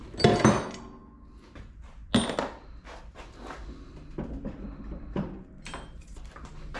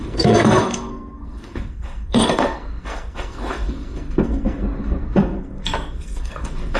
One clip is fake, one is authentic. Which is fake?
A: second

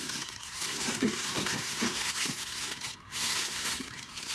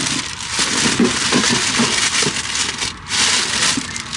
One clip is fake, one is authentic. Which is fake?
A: first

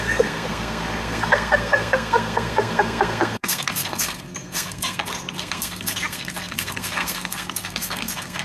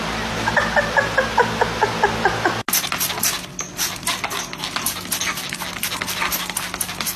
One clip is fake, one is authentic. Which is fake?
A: first